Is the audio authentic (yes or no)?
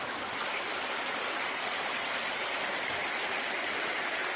yes